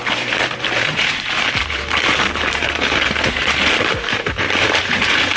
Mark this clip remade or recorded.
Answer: remade